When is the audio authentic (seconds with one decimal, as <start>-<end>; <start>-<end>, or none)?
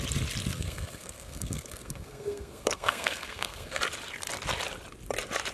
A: 0.0-0.5; 3.8-5.5